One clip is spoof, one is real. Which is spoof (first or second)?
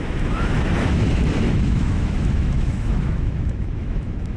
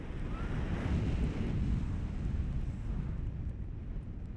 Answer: first